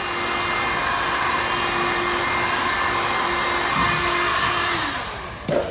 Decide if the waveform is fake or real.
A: real